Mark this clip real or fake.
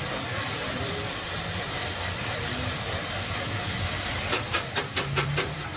fake